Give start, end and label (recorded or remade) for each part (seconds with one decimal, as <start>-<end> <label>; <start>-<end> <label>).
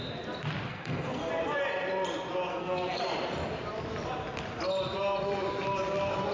0.0-0.7 recorded; 0.7-1.3 remade; 1.3-2.5 recorded; 2.5-3.0 remade; 3.0-6.3 recorded